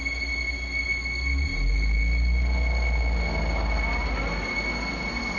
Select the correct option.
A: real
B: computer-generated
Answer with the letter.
A